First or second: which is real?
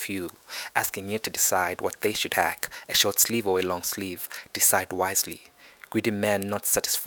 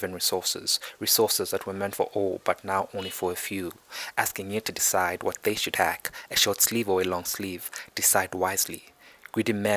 second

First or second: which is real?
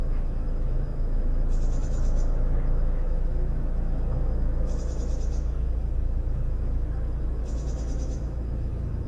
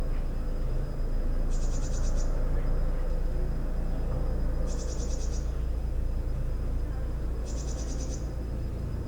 second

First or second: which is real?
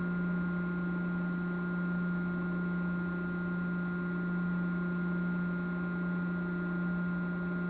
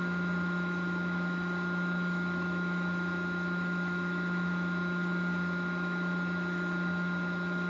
first